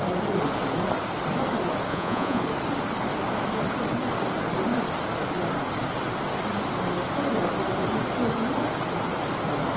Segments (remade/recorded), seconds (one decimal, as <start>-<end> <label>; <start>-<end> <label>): 0.0-1.9 recorded; 1.9-2.4 remade; 2.4-9.8 recorded